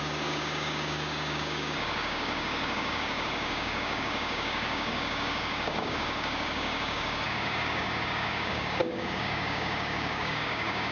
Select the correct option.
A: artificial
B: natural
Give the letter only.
A